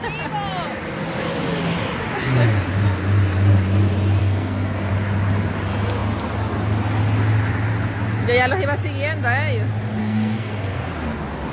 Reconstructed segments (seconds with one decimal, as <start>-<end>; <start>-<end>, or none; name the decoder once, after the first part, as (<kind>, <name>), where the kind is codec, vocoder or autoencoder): 4.2-4.9 (codec, SNAC); 10.0-10.8